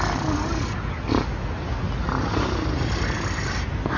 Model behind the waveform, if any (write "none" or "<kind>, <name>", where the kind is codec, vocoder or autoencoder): none